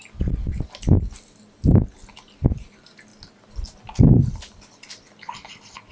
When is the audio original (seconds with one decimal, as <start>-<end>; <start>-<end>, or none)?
0.0-5.9